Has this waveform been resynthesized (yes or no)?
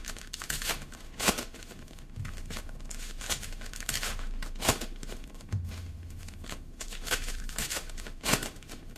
yes